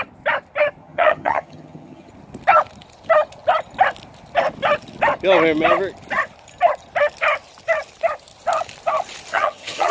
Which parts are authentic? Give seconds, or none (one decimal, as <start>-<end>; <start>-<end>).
0.0-0.8; 2.1-9.3